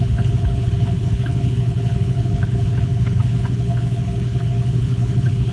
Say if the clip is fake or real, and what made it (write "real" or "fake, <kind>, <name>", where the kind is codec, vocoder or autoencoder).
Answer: fake, codec, HILCodec